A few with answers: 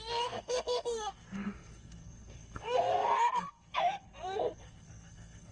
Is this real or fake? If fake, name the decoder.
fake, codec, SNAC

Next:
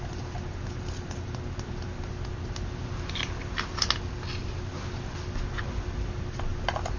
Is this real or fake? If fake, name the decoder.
real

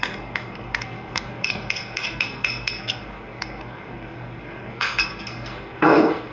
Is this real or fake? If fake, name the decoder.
fake, codec, SNAC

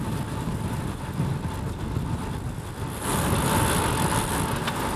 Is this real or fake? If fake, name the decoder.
real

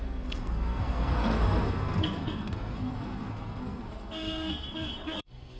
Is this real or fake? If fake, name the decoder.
fake, codec, SNAC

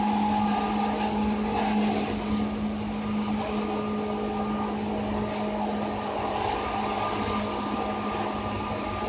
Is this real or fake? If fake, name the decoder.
real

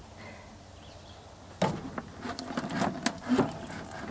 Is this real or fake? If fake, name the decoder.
real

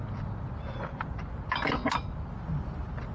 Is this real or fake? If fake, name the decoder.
real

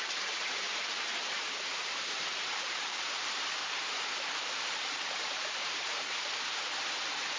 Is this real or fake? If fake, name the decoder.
fake, vocoder, BigVGAN v2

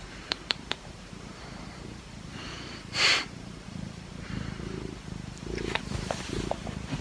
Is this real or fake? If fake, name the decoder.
fake, vocoder, BigVGAN v2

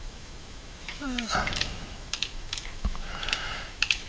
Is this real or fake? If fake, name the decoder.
fake, autoencoder, DAC-VAE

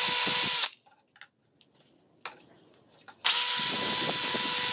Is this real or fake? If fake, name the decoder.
real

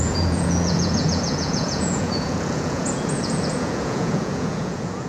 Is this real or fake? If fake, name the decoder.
fake, vocoder, Vocos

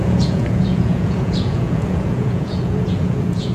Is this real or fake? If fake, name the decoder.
fake, vocoder, Vocos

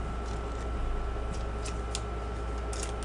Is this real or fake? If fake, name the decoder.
real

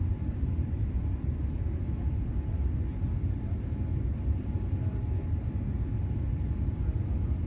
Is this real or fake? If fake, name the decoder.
real